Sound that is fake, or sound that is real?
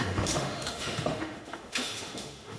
fake